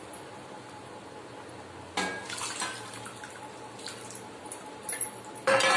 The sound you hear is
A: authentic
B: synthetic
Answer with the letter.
A